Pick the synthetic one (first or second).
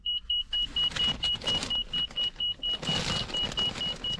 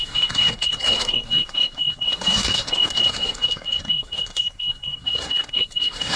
second